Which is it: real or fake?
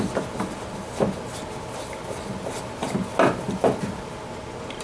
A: real